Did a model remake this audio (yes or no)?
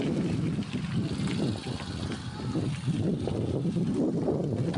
no